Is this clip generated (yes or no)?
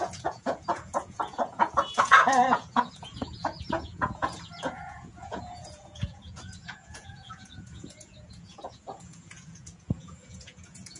yes